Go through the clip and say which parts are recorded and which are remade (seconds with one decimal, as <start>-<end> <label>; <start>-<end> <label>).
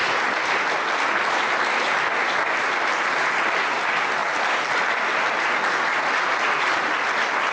0.0-1.1 remade; 1.1-4.2 recorded; 4.2-5.3 remade; 5.3-7.5 recorded